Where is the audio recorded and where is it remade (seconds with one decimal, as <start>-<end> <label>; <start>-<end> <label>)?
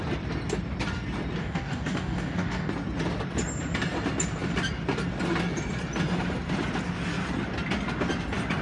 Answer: 0.0-1.4 recorded; 1.4-2.7 remade; 2.7-8.6 recorded